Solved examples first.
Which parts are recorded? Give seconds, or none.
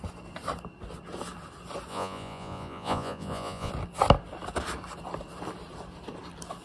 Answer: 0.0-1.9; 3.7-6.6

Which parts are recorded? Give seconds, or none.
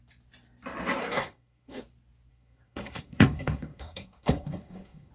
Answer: 0.0-1.0; 1.8-2.3